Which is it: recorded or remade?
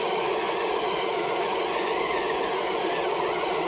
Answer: remade